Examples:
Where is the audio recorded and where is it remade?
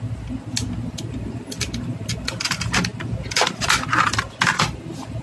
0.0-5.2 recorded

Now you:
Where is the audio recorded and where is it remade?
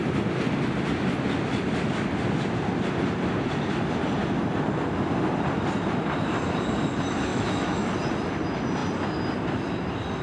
0.0-7.3 recorded; 7.3-7.9 remade; 7.9-10.2 recorded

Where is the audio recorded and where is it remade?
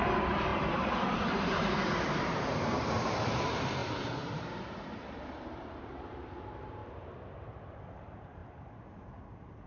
0.0-6.8 remade; 6.8-7.9 recorded; 7.9-8.4 remade; 8.4-9.2 recorded; 9.2-9.7 remade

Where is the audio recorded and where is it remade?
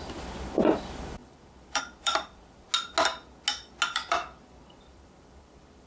0.0-2.7 remade; 2.7-3.9 recorded; 3.9-5.9 remade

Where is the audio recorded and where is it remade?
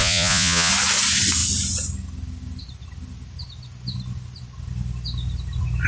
0.0-0.7 remade; 0.7-5.9 recorded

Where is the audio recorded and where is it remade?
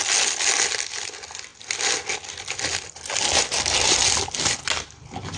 0.0-5.4 recorded